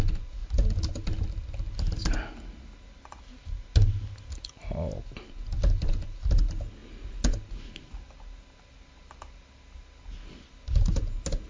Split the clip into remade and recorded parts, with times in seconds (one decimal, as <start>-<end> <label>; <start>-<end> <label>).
0.0-11.5 recorded